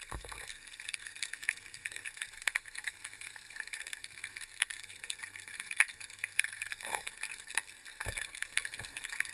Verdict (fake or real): fake